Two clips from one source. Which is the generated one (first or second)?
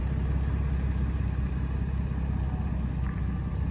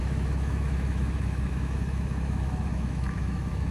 second